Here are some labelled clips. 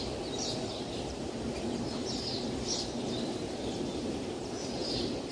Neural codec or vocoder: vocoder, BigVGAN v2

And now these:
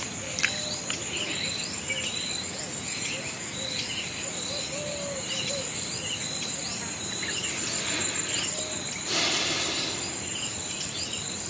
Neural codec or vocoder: vocoder, BigVGAN v2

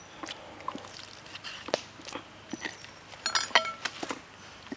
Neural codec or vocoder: none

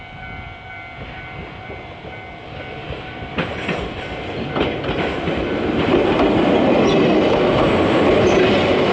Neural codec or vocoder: none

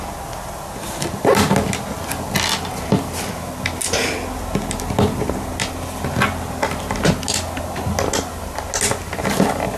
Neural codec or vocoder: none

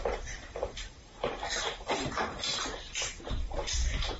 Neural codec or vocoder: vocoder, BigVGAN v2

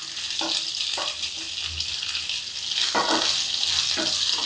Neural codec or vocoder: none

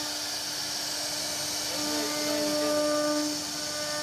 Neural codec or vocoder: none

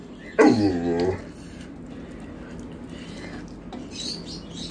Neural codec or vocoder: none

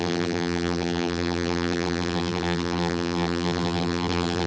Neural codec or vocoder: vocoder, BigVGAN v2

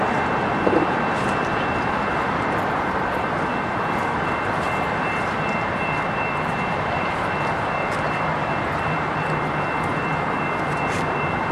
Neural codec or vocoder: vocoder, BigVGAN v2